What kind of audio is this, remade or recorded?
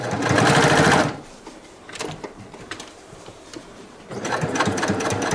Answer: remade